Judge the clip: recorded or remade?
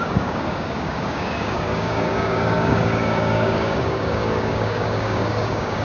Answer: remade